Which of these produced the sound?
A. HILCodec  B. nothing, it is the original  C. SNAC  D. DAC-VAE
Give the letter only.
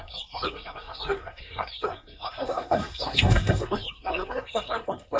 C